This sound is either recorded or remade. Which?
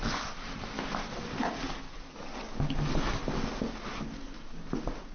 recorded